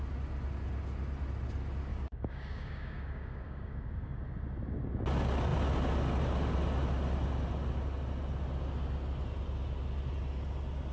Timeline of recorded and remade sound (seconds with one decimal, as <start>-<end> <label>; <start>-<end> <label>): 0.0-1.9 recorded; 1.9-4.2 remade; 4.2-10.9 recorded